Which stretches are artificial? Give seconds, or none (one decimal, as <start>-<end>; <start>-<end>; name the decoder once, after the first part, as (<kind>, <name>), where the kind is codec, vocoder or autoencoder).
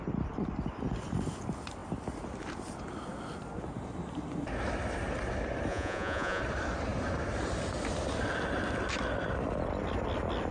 5.7-6.4 (vocoder, Vocos)